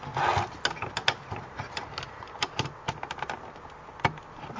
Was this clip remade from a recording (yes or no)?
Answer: no